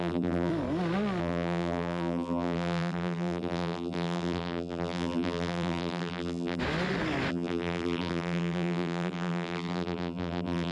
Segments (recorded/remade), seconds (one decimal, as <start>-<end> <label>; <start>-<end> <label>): 0.0-0.5 remade; 0.5-1.2 recorded; 1.2-6.6 remade; 6.6-7.3 recorded; 7.3-10.7 remade